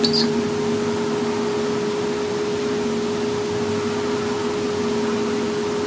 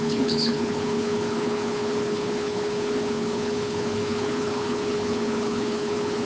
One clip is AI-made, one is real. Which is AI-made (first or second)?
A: second